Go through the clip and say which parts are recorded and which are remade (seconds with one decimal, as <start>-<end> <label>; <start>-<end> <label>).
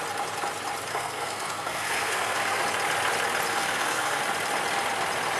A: 0.0-0.9 recorded; 0.9-2.6 remade; 2.6-3.5 recorded; 3.5-4.2 remade; 4.2-5.4 recorded